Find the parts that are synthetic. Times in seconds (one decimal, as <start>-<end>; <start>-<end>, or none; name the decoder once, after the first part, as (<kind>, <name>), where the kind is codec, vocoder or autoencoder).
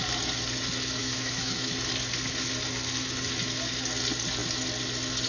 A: 1.0-1.7 (autoencoder, DAC-VAE)